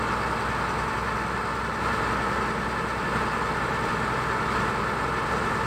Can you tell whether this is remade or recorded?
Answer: recorded